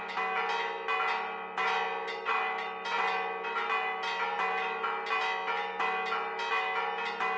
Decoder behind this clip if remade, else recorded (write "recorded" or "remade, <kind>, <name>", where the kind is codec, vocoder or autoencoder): recorded